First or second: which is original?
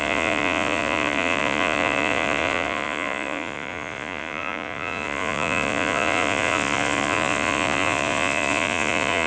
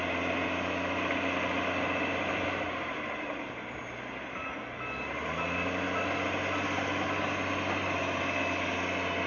second